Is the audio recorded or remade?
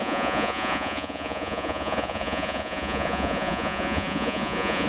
remade